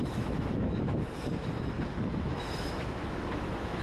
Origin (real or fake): fake